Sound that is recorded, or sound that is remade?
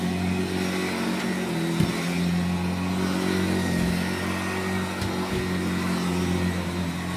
recorded